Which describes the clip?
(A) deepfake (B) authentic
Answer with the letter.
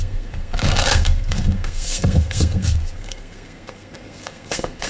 A